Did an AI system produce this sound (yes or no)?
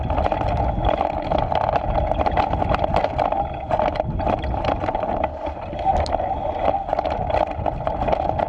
no